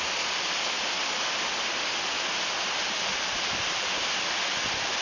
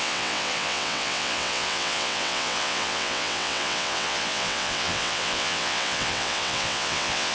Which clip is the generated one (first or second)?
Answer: second